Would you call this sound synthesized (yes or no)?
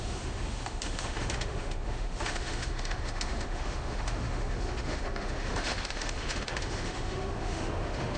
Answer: yes